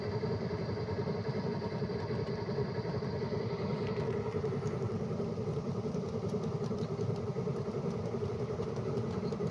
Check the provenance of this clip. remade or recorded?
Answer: recorded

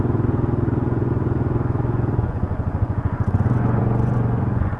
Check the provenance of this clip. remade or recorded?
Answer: remade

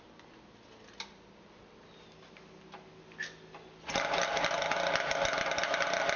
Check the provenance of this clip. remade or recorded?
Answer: recorded